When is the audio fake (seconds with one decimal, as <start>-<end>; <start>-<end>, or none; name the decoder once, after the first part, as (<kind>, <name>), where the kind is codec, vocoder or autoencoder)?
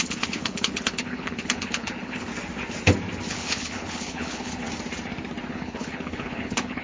0.0-2.3 (codec, HILCodec); 3.3-4.6; 5.5-6.8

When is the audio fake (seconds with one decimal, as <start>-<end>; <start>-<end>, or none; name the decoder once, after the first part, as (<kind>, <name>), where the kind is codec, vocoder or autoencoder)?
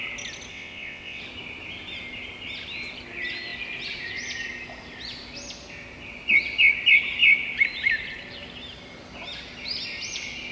0.5-1.2 (vocoder, WaveNeXt)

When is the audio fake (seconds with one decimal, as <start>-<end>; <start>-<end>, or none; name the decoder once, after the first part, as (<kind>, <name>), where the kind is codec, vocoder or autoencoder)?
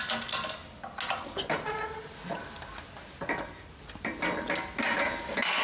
none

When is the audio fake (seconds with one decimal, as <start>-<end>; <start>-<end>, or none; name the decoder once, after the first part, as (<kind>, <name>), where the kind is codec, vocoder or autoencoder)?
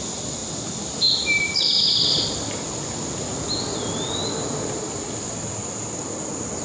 none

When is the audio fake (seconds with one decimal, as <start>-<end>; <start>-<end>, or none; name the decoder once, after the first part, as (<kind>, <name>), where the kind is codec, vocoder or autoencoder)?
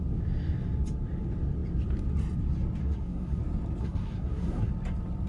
2.8-3.4 (codec, SNAC); 3.8-4.7